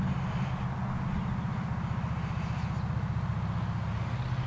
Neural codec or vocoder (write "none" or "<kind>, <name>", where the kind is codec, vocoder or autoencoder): none